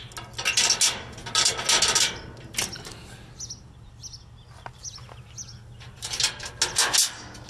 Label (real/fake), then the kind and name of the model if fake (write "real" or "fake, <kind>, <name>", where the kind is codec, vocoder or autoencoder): real